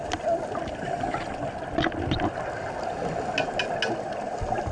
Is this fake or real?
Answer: real